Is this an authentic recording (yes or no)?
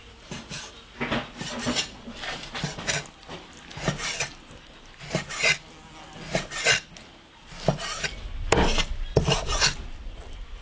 yes